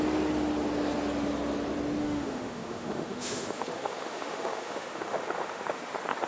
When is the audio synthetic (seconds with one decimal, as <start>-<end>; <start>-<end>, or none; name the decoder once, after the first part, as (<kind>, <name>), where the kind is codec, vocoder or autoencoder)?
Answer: 2.0-5.8 (autoencoder, DAC-VAE)